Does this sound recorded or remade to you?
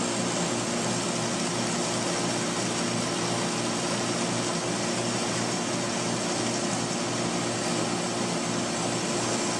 recorded